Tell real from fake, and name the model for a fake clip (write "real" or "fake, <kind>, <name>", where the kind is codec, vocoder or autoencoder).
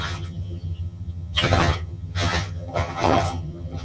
fake, vocoder, HiFi-GAN